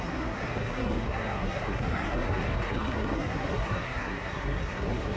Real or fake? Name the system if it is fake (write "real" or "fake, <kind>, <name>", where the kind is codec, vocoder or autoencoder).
fake, codec, SNAC